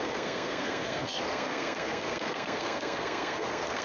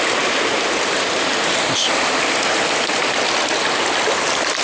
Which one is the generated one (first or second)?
first